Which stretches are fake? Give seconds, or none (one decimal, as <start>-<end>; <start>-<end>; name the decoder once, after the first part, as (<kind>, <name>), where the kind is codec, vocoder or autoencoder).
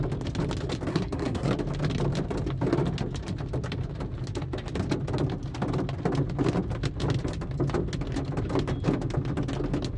0.9-1.5 (codec, SNAC)